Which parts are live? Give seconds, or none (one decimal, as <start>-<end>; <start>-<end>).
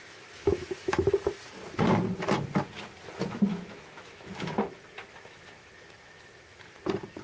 1.1-3.5; 6.8-7.2